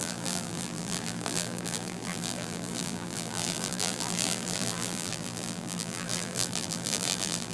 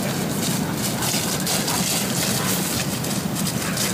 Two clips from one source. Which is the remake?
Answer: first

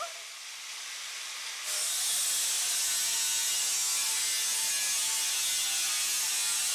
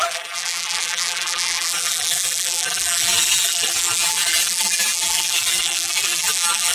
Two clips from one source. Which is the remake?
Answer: second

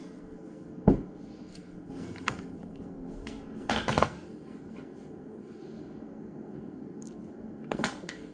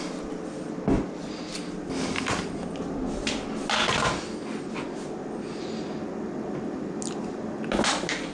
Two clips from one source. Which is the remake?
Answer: first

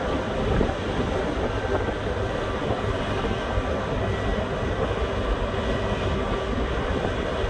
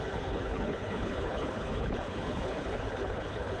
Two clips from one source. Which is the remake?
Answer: second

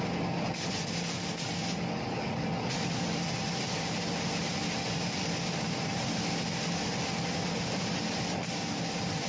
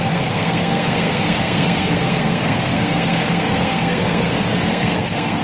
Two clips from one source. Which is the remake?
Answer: second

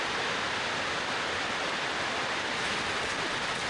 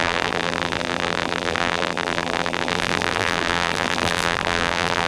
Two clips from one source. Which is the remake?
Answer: second